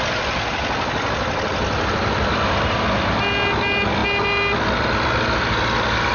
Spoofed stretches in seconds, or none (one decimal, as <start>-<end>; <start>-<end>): none